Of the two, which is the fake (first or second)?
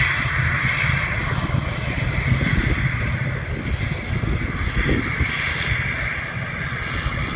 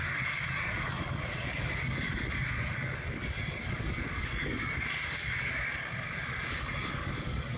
second